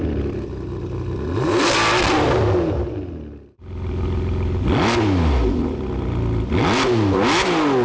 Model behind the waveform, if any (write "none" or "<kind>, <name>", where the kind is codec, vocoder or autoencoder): none